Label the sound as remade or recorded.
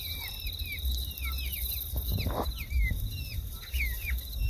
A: recorded